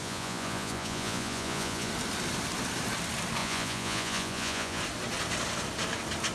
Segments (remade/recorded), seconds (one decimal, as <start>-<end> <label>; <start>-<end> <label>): 0.0-1.9 remade; 1.9-3.4 recorded; 3.4-4.8 remade; 4.8-6.3 recorded